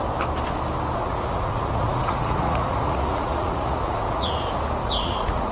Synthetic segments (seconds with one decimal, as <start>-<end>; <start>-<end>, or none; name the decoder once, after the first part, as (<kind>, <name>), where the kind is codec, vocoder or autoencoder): 1.0-4.3 (vocoder, Vocos); 4.8-5.5